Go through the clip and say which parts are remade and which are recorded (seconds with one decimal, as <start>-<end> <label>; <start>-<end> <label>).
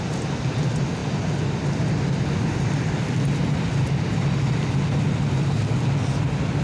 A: 0.0-6.6 recorded